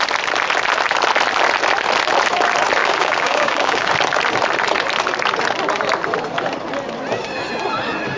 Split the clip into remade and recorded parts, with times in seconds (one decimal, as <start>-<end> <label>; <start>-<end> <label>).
0.0-2.8 recorded; 2.8-3.9 remade; 3.9-8.2 recorded